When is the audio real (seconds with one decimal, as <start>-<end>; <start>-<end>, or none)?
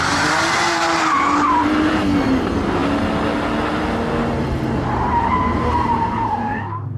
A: 2.8-4.8